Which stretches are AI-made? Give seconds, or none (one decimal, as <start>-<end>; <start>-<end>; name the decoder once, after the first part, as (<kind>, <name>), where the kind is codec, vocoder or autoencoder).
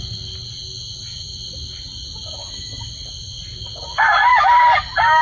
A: none